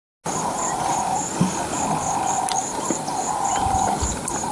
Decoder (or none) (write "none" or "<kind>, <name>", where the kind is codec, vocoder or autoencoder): none